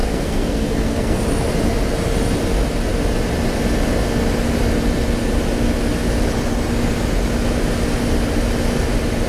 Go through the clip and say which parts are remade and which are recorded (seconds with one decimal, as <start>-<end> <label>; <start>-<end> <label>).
0.0-1.2 remade; 1.2-9.3 recorded